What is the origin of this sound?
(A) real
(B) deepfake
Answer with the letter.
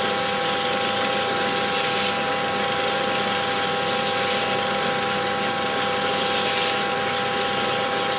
A